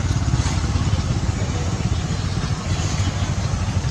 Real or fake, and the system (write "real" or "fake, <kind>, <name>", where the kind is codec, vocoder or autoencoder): real